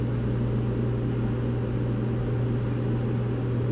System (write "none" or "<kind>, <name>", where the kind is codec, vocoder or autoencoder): none